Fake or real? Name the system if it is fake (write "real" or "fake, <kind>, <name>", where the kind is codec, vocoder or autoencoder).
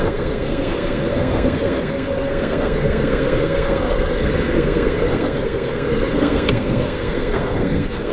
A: fake, codec, SNAC